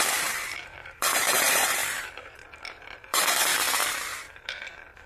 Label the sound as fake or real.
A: fake